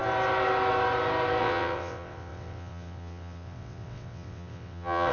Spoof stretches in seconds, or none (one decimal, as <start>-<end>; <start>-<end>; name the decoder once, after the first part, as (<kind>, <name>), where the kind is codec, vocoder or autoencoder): 1.4-5.1 (vocoder, WaveNeXt)